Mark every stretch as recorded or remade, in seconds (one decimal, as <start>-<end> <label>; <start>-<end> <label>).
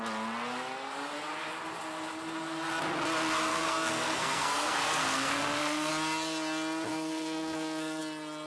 0.0-3.5 recorded; 3.5-5.9 remade; 5.9-6.9 recorded; 6.9-8.0 remade; 8.0-8.5 recorded